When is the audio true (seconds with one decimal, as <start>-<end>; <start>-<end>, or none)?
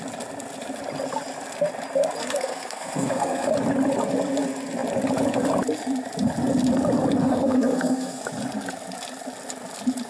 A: 0.0-2.2; 3.5-7.2; 8.2-10.1